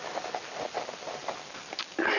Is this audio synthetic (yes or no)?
no